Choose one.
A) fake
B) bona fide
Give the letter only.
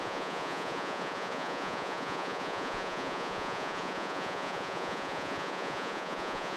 A